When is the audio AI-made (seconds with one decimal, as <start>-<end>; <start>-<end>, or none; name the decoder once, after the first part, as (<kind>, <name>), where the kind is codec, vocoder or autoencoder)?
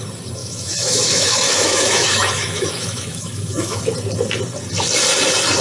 0.4-3.8 (autoencoder, DAC-VAE)